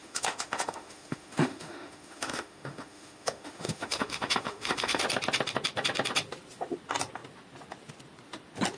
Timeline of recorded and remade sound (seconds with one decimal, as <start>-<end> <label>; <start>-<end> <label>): 0.0-5.0 remade; 5.0-8.8 recorded